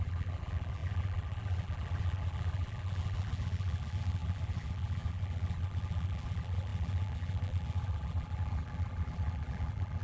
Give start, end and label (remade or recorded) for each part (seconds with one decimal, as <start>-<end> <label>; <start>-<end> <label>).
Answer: 0.0-10.0 remade